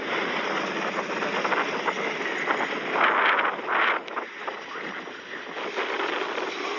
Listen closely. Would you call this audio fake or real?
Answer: real